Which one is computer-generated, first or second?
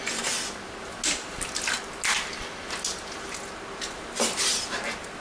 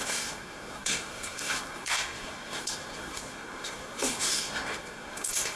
second